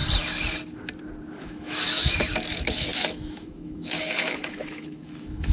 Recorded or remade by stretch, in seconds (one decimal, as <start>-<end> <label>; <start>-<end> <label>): 0.0-1.4 recorded; 1.4-5.5 remade